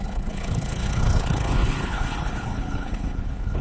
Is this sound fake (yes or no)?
yes